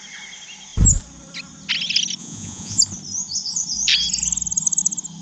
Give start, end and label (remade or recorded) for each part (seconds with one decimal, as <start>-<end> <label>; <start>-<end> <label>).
0.0-2.2 recorded; 2.2-2.8 remade; 2.8-5.2 recorded